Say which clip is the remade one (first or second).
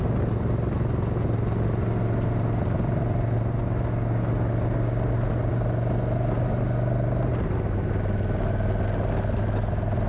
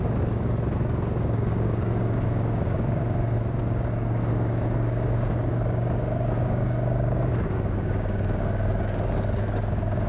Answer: second